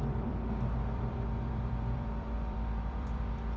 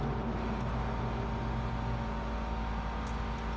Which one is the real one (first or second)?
second